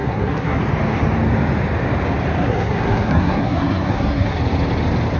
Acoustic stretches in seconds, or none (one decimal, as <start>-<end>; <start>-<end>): 0.6-2.4; 4.4-5.2

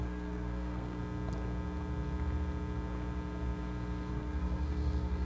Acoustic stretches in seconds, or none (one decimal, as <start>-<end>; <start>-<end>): 1.0-4.1

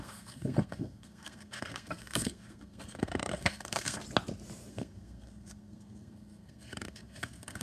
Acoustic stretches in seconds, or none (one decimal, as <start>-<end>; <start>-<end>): 4.0-4.7

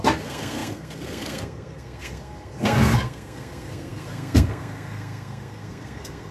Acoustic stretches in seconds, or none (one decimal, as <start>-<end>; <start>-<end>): none

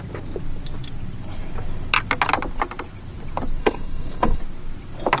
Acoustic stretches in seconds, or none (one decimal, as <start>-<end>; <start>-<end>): 0.0-3.6; 4.4-5.2